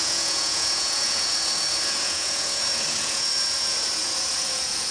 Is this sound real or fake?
fake